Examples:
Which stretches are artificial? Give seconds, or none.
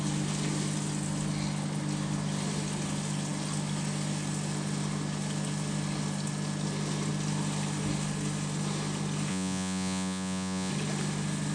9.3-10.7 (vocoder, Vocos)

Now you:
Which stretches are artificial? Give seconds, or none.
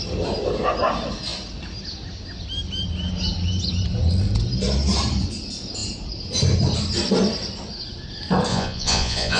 8.5-9.4 (vocoder, Vocos)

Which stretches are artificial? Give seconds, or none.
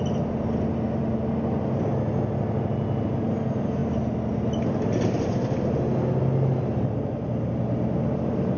none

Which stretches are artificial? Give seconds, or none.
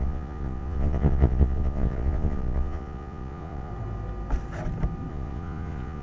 0.0-3.7 (vocoder, Vocos); 5.1-6.0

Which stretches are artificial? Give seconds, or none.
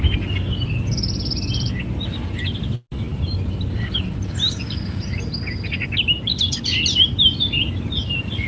none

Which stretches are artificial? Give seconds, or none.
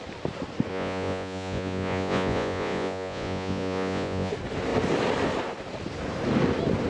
0.7-4.3 (vocoder, Vocos)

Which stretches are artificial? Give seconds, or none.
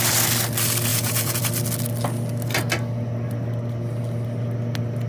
0.9-1.4 (vocoder, Vocos)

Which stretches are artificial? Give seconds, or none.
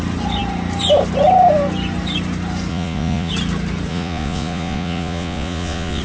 2.7-3.3 (vocoder, Vocos); 3.9-6.0